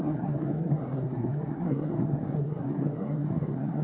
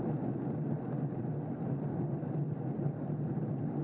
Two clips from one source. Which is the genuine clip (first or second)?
second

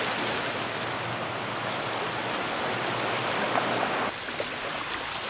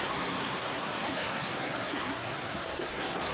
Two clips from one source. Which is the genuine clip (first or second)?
first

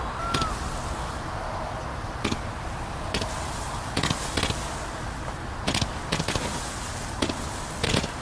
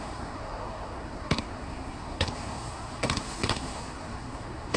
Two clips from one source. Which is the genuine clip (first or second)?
first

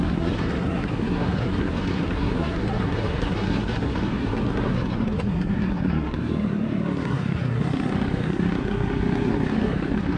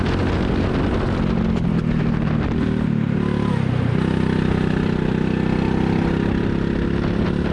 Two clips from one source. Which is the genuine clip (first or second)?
second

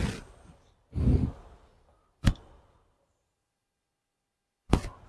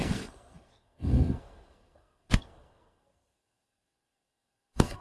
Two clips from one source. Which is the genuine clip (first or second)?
first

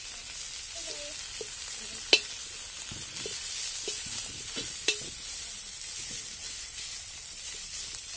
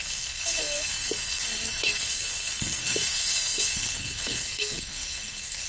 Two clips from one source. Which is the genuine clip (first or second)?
first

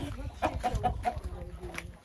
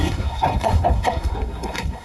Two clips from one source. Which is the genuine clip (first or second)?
first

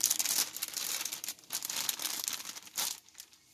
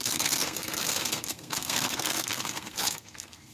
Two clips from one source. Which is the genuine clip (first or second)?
first